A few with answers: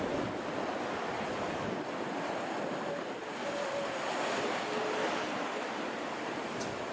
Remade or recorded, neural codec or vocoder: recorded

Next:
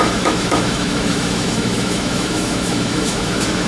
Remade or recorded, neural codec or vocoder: remade, autoencoder, DAC-VAE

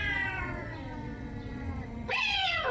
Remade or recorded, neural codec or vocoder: remade, vocoder, WaveNeXt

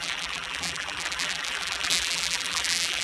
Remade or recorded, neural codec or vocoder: remade, vocoder, BigVGAN v2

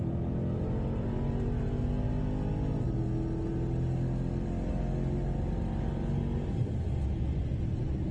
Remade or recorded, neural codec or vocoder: recorded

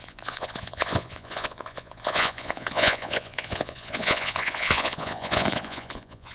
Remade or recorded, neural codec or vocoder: remade, vocoder, Vocos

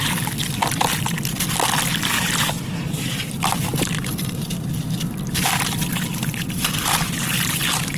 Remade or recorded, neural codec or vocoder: recorded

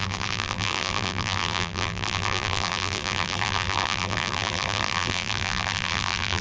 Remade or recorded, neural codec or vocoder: remade, vocoder, BigVGAN v2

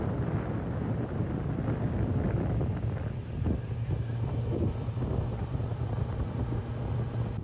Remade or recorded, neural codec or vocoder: recorded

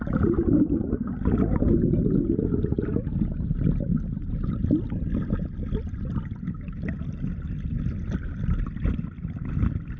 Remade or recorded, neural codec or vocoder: recorded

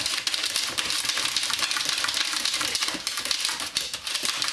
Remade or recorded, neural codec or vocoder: recorded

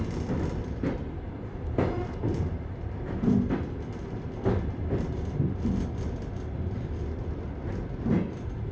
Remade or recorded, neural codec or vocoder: remade, vocoder, BigVGAN v2